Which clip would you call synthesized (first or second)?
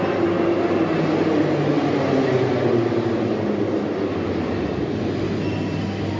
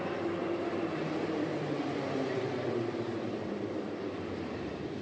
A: second